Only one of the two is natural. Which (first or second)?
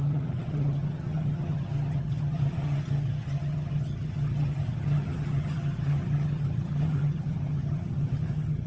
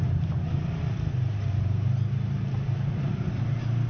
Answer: second